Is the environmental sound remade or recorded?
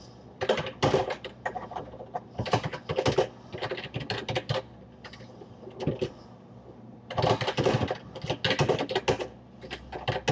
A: recorded